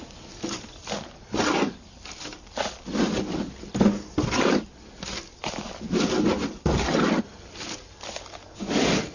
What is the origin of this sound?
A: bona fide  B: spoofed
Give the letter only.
A